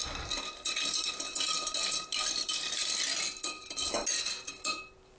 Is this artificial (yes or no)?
no